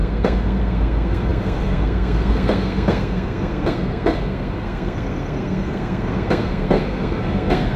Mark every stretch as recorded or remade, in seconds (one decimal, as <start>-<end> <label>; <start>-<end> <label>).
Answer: 0.0-7.8 remade

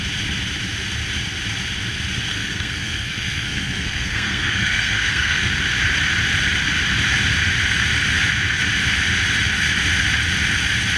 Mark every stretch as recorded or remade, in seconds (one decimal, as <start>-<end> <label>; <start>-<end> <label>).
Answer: 0.0-2.3 recorded; 2.3-5.5 remade; 5.5-11.0 recorded

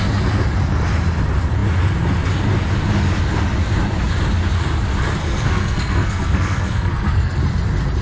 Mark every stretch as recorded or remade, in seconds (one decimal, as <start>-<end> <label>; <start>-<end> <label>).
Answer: 0.0-5.2 recorded; 5.2-7.4 remade; 7.4-8.0 recorded

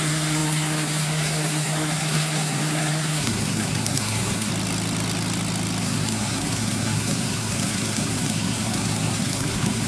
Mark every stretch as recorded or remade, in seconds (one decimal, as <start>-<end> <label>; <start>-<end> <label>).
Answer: 0.0-4.5 remade; 4.5-5.8 recorded; 5.8-9.9 remade

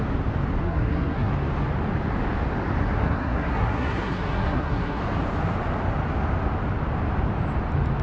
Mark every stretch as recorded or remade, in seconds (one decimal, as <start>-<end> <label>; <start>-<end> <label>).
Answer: 0.0-0.6 recorded; 0.6-1.3 remade; 1.3-2.8 recorded; 2.8-5.0 remade; 5.0-8.0 recorded